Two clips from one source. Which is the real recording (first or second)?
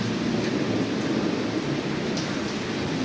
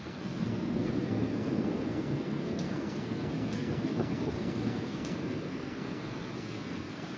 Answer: first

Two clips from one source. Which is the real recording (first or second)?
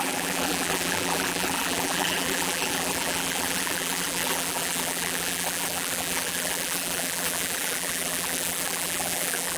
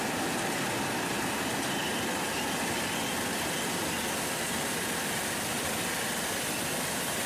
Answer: second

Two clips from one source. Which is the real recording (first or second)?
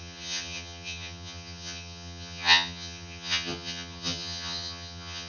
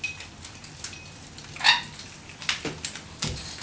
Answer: second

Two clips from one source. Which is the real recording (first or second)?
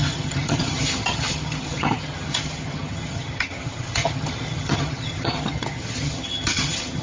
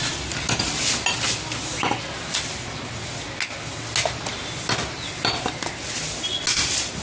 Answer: second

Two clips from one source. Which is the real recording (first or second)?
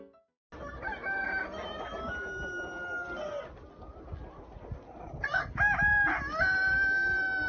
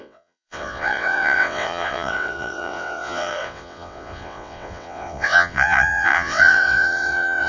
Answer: first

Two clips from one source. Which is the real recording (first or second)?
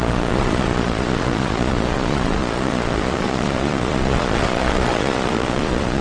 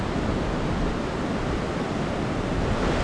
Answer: second